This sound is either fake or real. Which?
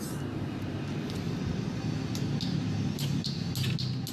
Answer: real